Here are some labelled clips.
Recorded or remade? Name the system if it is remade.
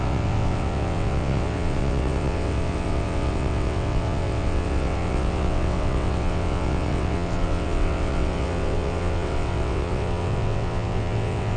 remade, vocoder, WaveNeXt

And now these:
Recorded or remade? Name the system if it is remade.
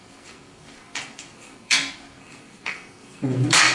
remade, codec, SNAC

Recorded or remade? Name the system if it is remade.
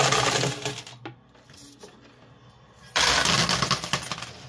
recorded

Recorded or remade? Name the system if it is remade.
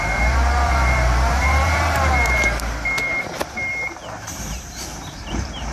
remade, vocoder, BigVGAN v2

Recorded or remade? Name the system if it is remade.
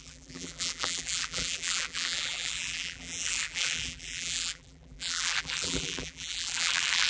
remade, vocoder, BigVGAN v2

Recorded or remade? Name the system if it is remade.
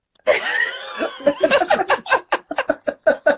recorded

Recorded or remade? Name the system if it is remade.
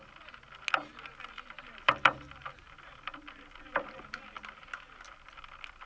recorded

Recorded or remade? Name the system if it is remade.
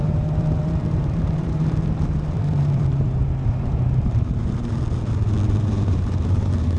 remade, vocoder, BigVGAN v2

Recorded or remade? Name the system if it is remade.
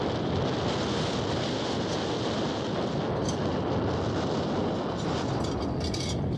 recorded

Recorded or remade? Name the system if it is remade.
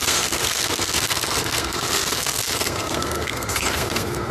remade, codec, SNAC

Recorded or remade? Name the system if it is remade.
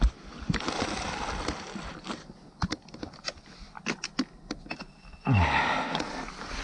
recorded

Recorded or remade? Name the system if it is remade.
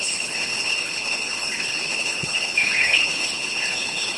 remade, codec, HILCodec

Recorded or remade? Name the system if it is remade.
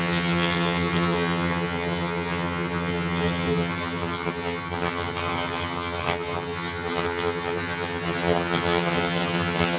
remade, vocoder, HiFi-GAN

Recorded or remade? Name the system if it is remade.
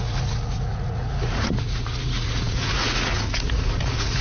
remade, vocoder, Vocos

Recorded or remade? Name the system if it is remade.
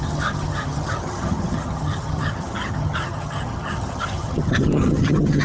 remade, vocoder, HiFi-GAN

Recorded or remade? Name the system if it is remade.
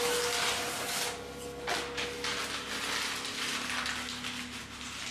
recorded